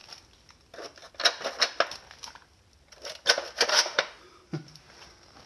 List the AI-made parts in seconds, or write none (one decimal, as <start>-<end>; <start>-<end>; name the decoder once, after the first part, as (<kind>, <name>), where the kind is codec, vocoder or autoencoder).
3.7-4.2 (autoencoder, DAC-VAE)